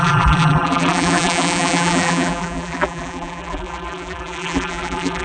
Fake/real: fake